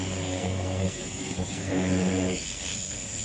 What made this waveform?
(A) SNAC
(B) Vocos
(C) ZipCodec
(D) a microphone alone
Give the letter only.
A